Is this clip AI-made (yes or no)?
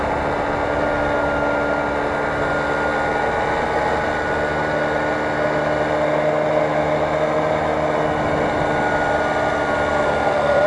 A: no